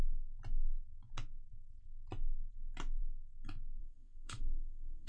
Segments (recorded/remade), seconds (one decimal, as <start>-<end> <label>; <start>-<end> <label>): 0.0-3.8 recorded; 3.8-5.1 remade